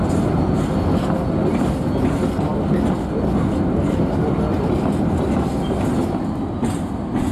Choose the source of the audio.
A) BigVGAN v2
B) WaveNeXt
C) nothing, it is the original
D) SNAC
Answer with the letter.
C